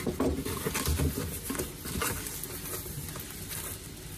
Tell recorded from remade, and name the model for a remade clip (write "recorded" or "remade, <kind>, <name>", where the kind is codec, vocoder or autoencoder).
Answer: recorded